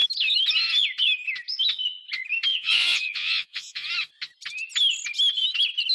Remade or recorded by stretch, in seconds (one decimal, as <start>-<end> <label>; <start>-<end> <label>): 0.0-2.5 recorded; 2.5-3.9 remade; 3.9-5.9 recorded